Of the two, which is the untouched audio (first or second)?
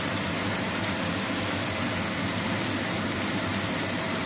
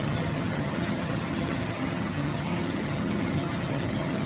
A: first